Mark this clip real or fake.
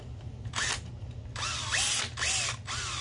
real